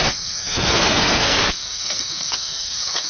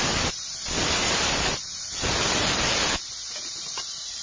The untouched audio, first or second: second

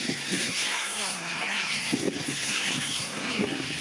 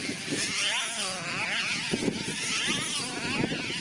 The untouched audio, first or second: second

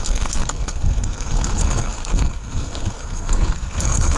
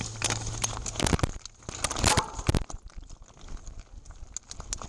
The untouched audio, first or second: second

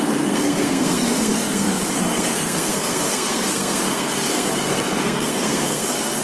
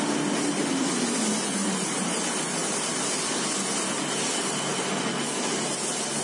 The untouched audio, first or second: second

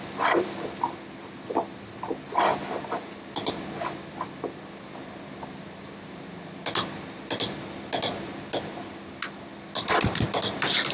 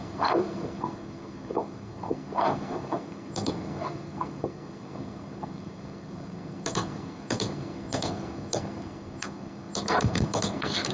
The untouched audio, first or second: first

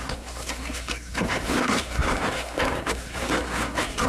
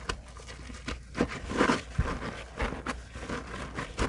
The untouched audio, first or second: second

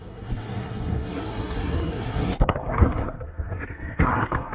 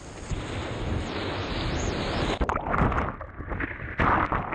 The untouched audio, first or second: second